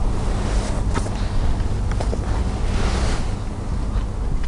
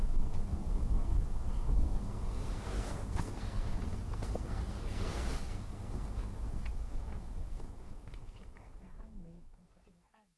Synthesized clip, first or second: second